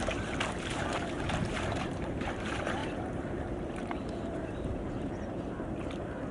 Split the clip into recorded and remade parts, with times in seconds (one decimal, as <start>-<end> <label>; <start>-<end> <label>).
0.0-6.3 remade